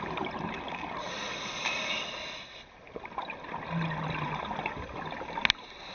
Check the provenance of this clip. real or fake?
real